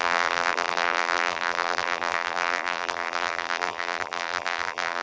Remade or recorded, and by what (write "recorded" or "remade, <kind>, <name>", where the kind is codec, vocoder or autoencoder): remade, vocoder, BigVGAN v2